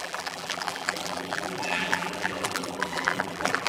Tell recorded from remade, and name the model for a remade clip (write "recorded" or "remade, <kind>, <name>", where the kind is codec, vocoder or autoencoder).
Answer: remade, vocoder, BigVGAN v2